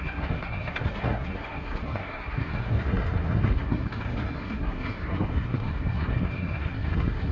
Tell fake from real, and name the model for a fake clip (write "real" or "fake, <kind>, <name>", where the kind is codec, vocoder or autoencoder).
fake, codec, SNAC